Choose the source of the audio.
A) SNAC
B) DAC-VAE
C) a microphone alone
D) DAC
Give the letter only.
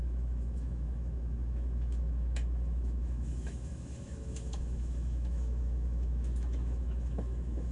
B